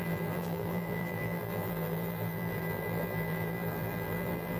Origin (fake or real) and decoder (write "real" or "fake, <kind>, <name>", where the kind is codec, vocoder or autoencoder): fake, vocoder, BigVGAN v2